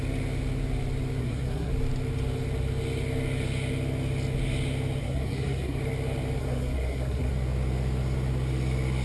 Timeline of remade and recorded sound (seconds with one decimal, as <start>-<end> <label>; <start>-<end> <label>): 0.0-1.2 recorded; 1.2-1.7 remade; 1.7-5.0 recorded; 5.0-5.8 remade; 5.8-6.4 recorded; 6.4-7.3 remade; 7.3-9.0 recorded

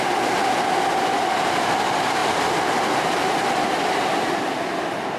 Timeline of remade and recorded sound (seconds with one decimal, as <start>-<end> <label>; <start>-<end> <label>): 0.0-5.2 recorded

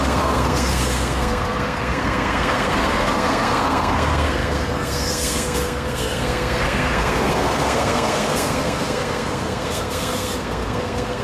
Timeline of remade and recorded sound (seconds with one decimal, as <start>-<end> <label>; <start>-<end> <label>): 0.0-11.2 remade

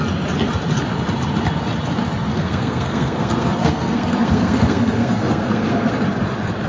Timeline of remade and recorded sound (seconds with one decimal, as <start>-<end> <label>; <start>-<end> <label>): 0.0-2.3 recorded; 2.3-5.9 remade; 5.9-6.7 recorded

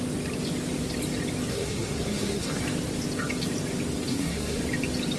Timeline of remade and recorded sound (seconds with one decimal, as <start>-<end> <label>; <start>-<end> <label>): 0.0-1.5 recorded; 1.5-2.6 remade; 2.6-4.1 recorded; 4.1-4.6 remade; 4.6-5.2 recorded

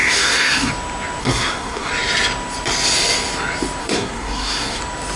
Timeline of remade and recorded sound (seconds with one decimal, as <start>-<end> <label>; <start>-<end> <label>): 0.0-0.7 remade; 0.7-1.2 recorded; 1.2-1.9 remade; 1.9-3.8 recorded; 3.8-4.8 remade; 4.8-5.2 recorded

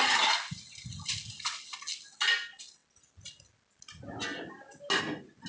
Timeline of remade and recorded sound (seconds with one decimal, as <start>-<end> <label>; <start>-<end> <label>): 0.0-5.5 recorded

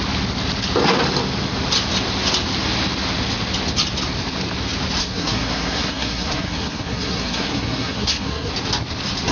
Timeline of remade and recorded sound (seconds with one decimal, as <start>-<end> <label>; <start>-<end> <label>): 0.0-5.0 recorded; 5.0-8.5 remade; 8.5-9.3 recorded